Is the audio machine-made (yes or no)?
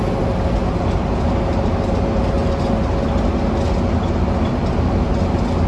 no